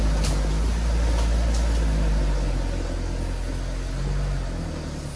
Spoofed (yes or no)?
no